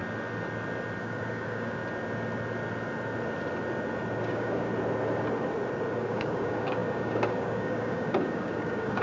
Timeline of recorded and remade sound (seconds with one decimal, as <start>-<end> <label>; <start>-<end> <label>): 0.0-1.0 recorded; 1.0-1.8 remade; 1.8-4.2 recorded; 4.2-4.7 remade; 4.7-5.9 recorded; 5.9-9.0 remade